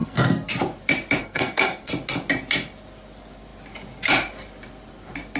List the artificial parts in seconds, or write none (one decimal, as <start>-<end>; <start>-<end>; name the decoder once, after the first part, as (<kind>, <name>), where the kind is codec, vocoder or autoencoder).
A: 0.0-0.5 (codec, SNAC); 1.2-1.9